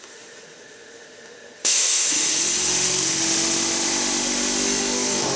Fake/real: fake